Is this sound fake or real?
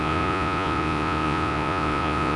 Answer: fake